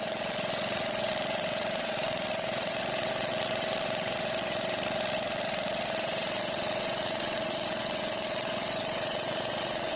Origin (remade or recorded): remade